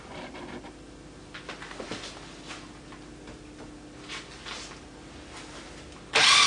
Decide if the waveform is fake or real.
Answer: real